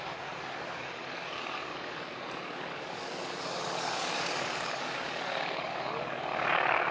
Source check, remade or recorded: remade